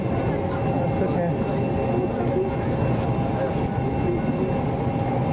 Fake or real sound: real